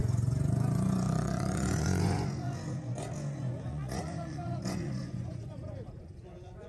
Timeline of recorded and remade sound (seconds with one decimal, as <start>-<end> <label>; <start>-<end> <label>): 0.0-6.7 remade